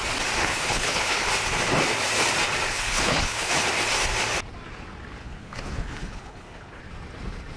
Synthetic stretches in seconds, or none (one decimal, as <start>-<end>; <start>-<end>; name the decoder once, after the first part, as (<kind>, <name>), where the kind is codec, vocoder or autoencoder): 0.4-1.3 (codec, HILCodec); 2.7-3.5; 5.2-6.8